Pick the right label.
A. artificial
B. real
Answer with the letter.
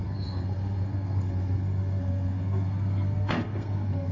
A